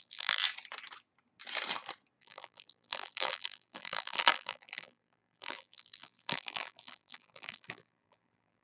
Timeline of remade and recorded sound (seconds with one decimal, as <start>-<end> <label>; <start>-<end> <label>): 0.0-0.4 remade; 0.4-2.2 recorded; 2.2-8.6 remade